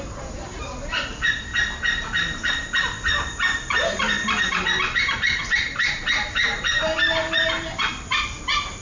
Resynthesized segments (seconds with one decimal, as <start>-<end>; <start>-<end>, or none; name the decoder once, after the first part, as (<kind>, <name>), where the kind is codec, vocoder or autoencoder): 0.0-1.5 (vocoder, BigVGAN v2); 4.5-8.8